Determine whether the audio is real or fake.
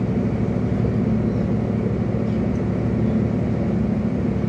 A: real